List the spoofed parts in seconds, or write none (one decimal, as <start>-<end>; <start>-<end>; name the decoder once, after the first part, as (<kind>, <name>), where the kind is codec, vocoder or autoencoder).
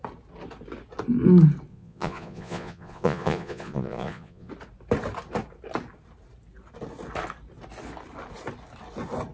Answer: 1.7-4.5 (vocoder, Vocos)